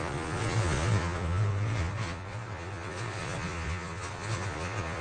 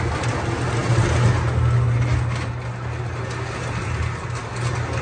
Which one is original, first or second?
second